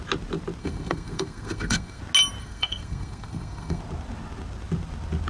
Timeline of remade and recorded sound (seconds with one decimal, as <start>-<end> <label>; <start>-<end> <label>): 0.0-0.6 recorded; 0.6-2.0 remade; 2.0-2.4 recorded; 2.4-3.8 remade; 3.8-5.3 recorded